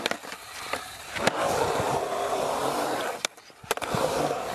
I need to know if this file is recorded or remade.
recorded